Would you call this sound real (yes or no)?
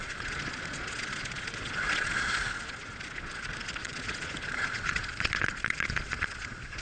no